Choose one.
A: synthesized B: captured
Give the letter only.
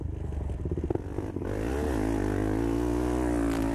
B